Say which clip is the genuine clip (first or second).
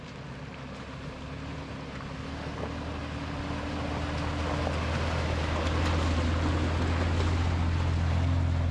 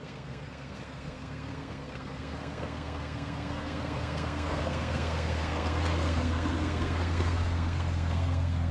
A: first